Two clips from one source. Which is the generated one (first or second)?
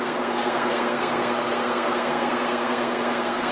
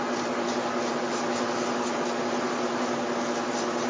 first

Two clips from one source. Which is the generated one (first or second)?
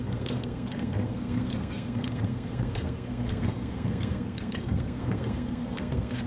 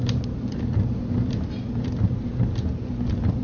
first